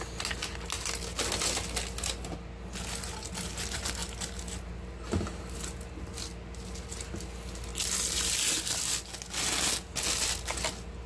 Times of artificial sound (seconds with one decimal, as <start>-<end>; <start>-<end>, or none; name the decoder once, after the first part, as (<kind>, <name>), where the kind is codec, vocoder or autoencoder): none